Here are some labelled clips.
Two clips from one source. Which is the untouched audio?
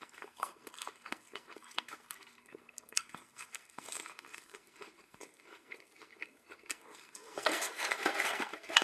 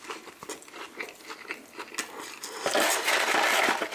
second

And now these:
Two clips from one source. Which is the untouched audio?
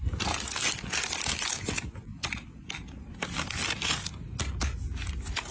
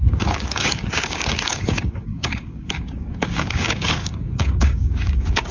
first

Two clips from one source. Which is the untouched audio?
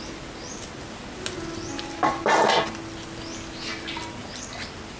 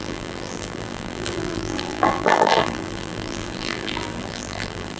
first